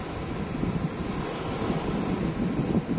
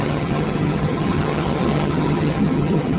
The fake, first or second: second